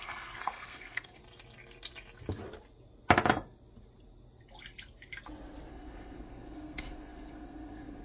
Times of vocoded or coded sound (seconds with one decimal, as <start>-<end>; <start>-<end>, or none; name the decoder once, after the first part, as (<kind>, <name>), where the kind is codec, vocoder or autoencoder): 0.0-1.2 (codec, SNAC); 5.7-8.0